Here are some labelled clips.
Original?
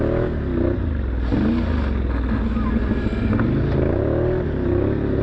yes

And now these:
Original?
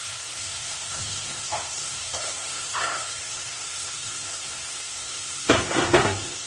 no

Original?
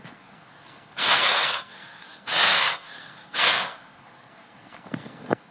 no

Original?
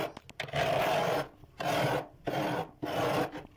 yes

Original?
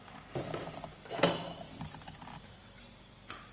yes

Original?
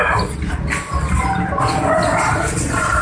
yes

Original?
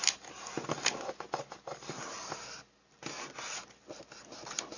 yes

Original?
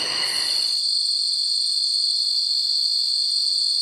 yes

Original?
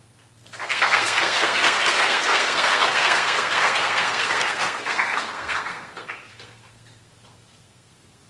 no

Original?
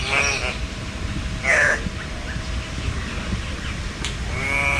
yes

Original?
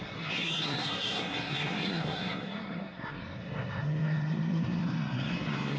no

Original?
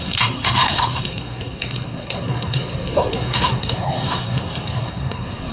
no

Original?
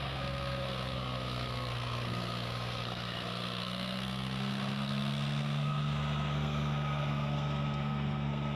no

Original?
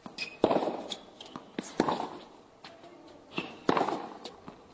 yes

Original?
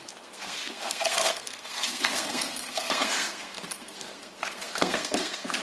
no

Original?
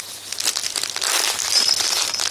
yes